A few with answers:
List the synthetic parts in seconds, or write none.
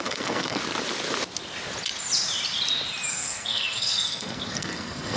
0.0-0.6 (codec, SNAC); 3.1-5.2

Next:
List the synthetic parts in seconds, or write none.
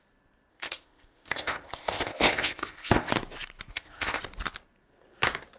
0.5-3.1 (codec, ZipCodec); 3.7-4.2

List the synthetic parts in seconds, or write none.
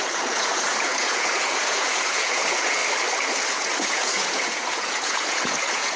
0.0-2.8 (vocoder, Vocos); 3.6-6.0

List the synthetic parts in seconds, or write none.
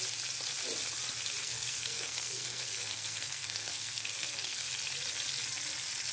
1.4-4.7 (codec, SNAC)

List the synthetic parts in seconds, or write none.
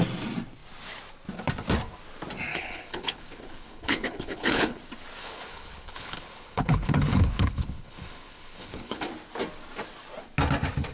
2.5-4.8 (codec, HILCodec); 5.2-9.0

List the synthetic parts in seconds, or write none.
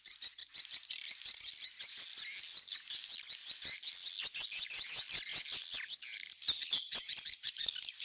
none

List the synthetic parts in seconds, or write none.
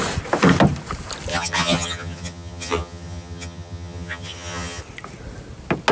1.3-4.8 (vocoder, HiFi-GAN)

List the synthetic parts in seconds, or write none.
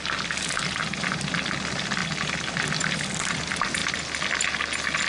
none